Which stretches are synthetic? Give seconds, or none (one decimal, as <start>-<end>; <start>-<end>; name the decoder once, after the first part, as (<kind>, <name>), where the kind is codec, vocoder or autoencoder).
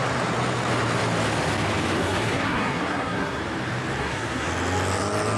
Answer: 2.0-3.4 (codec, SNAC); 4.0-4.5